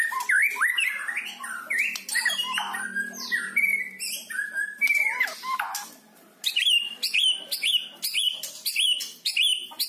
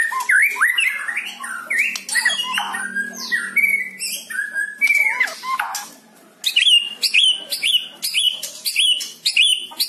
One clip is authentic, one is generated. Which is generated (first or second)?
first